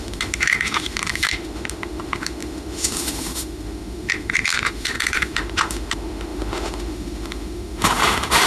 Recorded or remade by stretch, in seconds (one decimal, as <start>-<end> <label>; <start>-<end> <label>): 0.0-8.5 remade